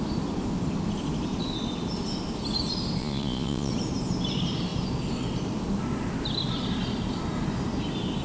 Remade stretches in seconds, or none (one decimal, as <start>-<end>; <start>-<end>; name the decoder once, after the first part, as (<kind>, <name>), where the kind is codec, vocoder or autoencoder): 3.0-3.7 (vocoder, Vocos)